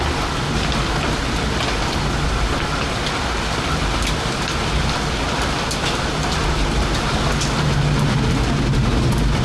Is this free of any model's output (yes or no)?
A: yes